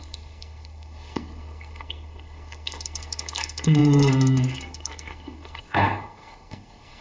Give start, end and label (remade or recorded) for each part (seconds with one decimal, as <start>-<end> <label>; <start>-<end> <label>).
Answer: 0.0-7.0 remade